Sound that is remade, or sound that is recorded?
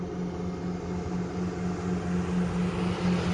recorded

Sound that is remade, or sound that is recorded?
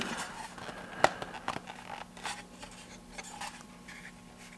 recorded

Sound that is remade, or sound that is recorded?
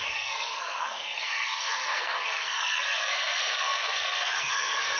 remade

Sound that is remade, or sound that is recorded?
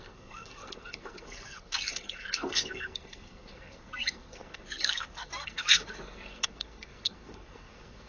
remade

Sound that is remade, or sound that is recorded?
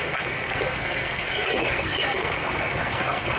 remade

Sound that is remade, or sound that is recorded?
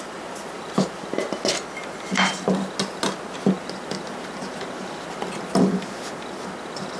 recorded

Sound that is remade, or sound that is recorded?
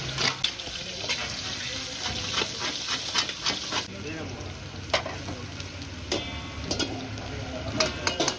recorded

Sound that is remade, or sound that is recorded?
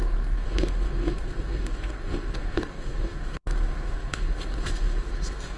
remade